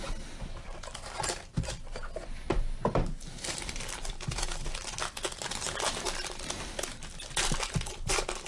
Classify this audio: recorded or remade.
recorded